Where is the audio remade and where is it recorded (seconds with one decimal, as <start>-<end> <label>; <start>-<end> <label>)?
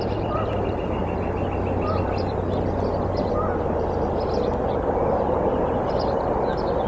0.0-6.9 recorded